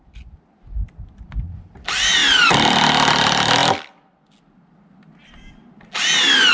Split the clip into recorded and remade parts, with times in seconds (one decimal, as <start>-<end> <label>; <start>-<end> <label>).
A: 0.0-6.5 recorded